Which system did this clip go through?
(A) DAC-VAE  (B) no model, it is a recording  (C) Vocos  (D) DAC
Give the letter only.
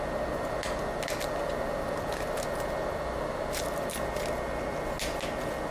B